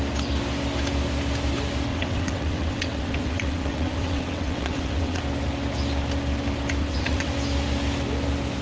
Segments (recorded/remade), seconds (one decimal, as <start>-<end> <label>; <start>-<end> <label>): 0.0-1.9 recorded; 1.9-5.2 remade; 5.2-6.8 recorded; 6.8-7.3 remade; 7.3-8.6 recorded